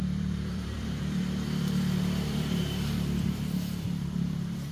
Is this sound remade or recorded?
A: remade